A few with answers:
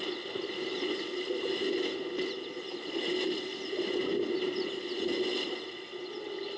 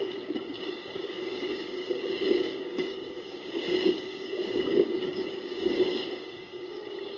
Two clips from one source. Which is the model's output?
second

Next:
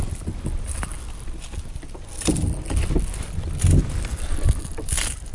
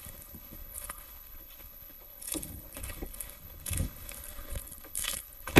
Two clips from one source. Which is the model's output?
second